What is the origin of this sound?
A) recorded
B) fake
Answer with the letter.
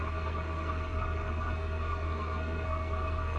B